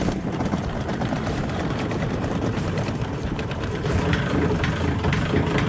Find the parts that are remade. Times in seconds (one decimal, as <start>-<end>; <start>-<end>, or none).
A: 0.9-3.9